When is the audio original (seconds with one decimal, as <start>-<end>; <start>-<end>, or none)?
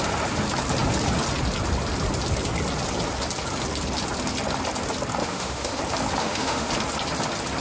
0.0-5.2; 5.8-6.2; 6.7-7.6